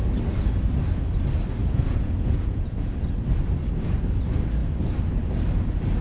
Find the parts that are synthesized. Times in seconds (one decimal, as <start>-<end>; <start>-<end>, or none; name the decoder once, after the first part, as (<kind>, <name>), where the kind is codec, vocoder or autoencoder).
1.6-2.9 (vocoder, Vocos)